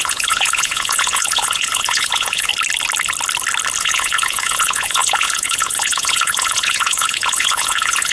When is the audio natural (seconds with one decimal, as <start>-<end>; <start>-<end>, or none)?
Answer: 2.5-3.8